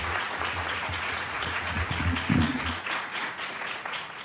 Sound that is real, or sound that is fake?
fake